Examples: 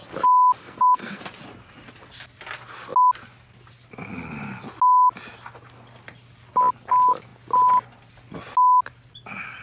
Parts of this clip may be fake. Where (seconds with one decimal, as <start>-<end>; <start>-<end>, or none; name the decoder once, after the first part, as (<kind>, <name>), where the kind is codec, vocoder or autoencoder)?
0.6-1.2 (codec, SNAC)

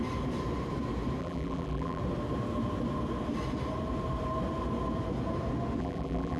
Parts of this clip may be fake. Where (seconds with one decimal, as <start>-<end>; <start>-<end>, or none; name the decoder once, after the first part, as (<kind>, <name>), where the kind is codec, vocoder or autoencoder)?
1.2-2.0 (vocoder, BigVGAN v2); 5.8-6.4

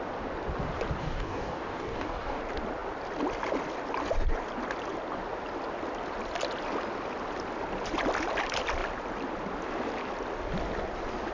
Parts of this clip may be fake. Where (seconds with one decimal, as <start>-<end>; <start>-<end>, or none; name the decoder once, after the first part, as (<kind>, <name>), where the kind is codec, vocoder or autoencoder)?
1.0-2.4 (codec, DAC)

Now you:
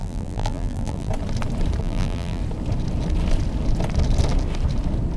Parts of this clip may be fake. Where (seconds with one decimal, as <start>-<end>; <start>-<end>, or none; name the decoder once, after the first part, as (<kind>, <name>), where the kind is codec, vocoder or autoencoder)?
0.0-1.1 (vocoder, BigVGAN v2); 1.8-2.4